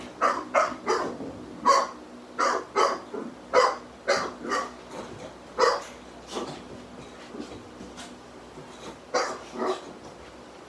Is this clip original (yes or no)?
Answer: yes